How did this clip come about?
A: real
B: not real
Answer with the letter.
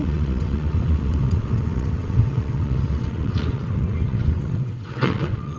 B